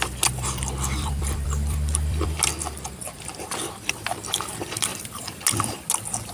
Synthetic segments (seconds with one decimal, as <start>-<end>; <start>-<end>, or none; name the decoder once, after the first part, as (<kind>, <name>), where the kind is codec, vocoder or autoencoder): 0.0-2.5 (vocoder, BigVGAN v2); 3.7-4.9

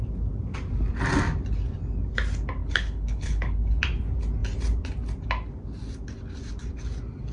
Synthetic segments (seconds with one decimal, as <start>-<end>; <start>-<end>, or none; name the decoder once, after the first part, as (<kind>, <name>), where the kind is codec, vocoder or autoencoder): 2.6-3.8 (codec, HILCodec)

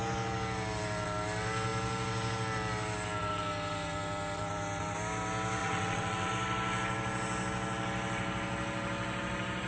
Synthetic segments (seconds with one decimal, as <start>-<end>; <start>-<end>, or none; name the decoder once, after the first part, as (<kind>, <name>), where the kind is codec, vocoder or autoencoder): 5.6-6.3 (vocoder, WaveNeXt)

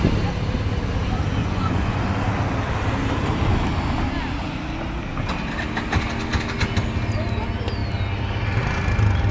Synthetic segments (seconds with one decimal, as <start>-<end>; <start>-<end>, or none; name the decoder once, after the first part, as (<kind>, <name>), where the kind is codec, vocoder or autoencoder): 1.4-2.0 (vocoder, Vocos)

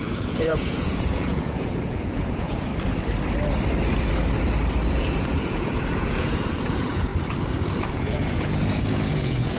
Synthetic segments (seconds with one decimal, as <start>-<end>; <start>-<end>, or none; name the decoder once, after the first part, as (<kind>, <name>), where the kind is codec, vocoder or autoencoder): 0.0-2.7 (vocoder, Vocos); 4.9-7.1; 7.9-9.6

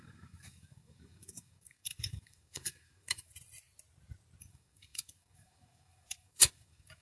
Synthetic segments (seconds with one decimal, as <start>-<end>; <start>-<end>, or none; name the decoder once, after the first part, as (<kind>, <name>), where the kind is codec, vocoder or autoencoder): 0.0-3.3 (codec, DAC); 4.4-7.0

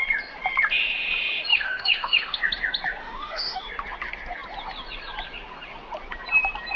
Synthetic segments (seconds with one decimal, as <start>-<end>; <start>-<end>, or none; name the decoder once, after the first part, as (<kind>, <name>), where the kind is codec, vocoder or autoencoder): 1.5-2.4 (autoencoder, DAC-VAE); 3.0-3.7

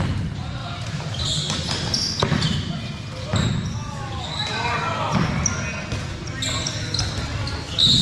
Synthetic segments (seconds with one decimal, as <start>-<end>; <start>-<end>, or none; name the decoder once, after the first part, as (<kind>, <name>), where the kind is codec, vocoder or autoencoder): 0.6-1.2 (vocoder, BigVGAN v2)